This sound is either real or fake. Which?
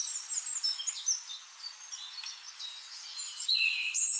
real